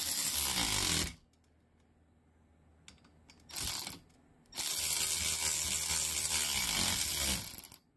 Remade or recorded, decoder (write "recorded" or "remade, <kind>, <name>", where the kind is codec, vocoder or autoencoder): recorded